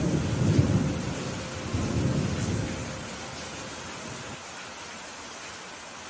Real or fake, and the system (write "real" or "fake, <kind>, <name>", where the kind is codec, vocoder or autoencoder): real